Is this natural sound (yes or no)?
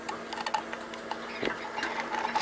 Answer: yes